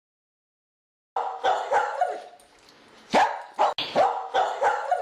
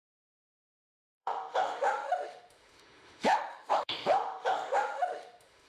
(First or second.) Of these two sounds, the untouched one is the first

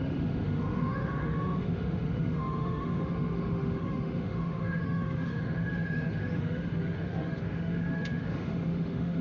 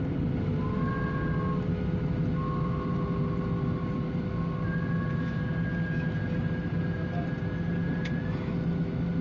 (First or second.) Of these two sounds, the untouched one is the second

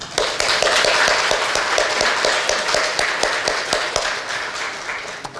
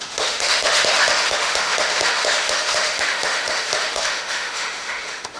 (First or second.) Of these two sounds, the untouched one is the first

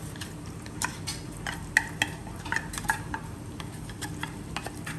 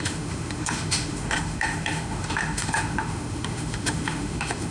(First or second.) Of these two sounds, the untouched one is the first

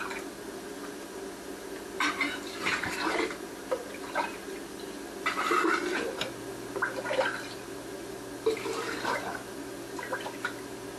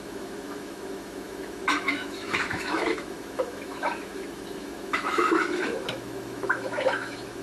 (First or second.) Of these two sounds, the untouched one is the first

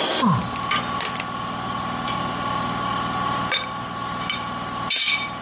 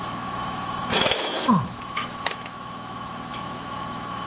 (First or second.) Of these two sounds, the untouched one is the first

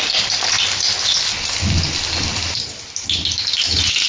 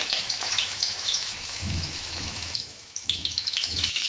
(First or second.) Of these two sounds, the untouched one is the first